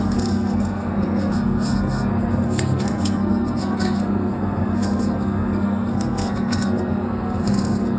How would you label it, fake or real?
fake